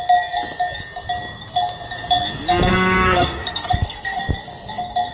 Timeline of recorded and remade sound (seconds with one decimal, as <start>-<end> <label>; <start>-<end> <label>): 0.0-2.7 recorded; 2.7-4.2 remade; 4.2-5.1 recorded